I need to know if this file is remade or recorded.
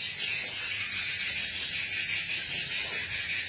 recorded